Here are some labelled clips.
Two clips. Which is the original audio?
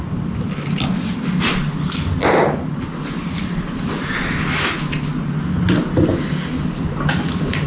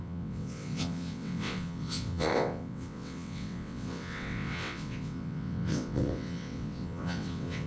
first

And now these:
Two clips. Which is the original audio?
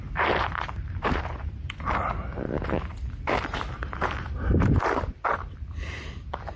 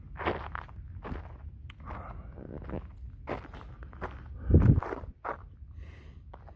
second